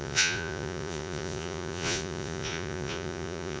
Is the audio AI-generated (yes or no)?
yes